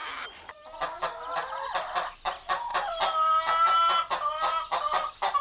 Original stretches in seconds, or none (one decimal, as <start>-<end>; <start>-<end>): 0.0-5.4

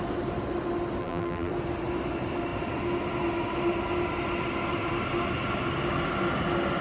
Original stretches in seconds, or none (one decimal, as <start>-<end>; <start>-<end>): 0.0-1.0; 1.5-6.8

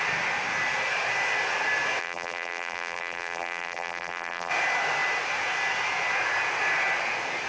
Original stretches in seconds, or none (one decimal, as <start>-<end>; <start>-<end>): 0.0-2.0; 4.5-7.5

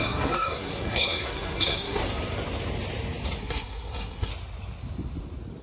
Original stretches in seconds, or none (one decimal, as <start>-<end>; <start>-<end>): 2.0-3.4; 4.3-5.6

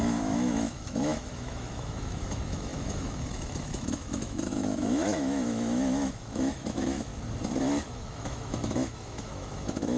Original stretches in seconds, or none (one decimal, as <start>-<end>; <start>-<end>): 7.1-7.9

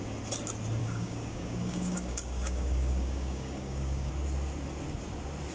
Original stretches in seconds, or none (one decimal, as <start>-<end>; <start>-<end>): 0.0-0.8; 4.1-5.5

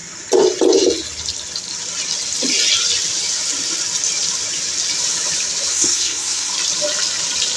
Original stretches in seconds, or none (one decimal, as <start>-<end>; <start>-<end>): 0.0-5.7; 6.5-7.6

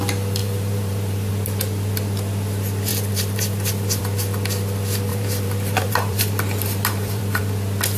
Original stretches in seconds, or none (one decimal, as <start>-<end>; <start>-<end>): 0.0-0.4; 1.3-2.9; 4.0-5.1; 7.4-8.0